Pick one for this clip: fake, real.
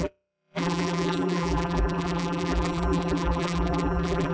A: fake